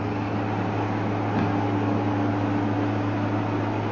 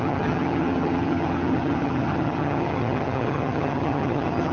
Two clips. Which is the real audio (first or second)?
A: first